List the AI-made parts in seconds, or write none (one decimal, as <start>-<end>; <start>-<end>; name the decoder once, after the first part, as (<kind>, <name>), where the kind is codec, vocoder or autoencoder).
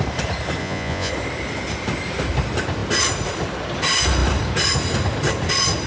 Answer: 0.6-1.1 (vocoder, Vocos)